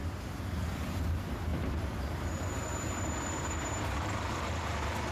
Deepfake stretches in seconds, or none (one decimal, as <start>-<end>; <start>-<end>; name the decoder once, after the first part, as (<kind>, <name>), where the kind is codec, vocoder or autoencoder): 0.0-5.1 (vocoder, BigVGAN v2)

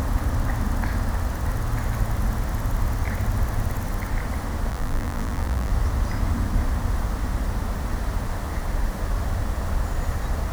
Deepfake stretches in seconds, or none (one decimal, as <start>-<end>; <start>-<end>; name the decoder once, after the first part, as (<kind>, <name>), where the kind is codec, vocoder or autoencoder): 4.7-5.7 (vocoder, BigVGAN v2)